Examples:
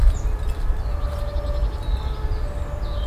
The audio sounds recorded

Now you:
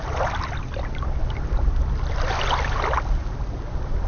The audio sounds recorded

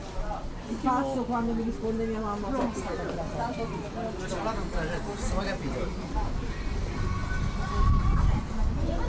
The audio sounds recorded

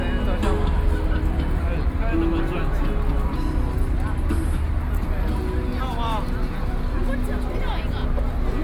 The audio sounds recorded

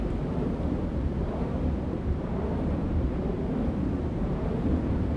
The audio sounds remade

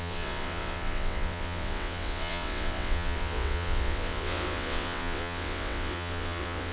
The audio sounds remade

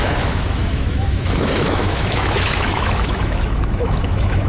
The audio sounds remade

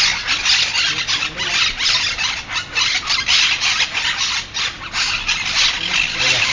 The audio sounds recorded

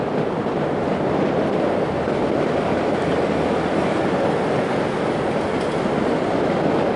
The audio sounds recorded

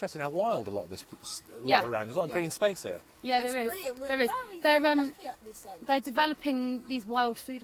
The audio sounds remade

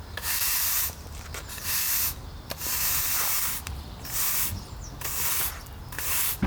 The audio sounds remade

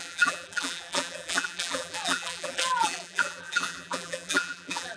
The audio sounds remade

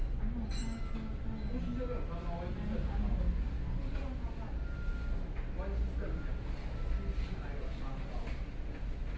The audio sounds recorded